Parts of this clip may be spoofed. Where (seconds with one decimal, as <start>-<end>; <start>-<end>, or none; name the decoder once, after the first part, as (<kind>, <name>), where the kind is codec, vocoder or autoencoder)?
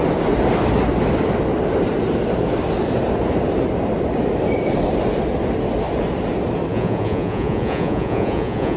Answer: 6.7-8.8 (vocoder, Vocos)